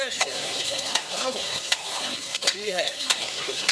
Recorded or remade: remade